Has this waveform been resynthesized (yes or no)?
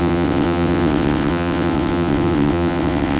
yes